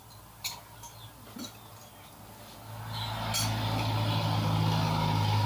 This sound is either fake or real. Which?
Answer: real